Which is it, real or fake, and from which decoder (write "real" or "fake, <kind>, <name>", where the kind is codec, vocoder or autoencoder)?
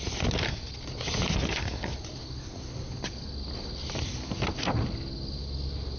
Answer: real